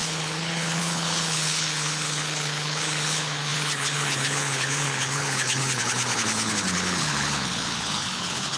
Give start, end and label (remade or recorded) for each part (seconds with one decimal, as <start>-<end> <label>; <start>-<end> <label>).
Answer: 0.0-8.6 remade